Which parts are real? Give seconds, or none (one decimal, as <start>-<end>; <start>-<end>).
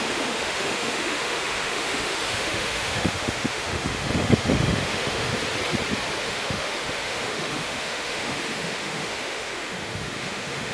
5.3-6.2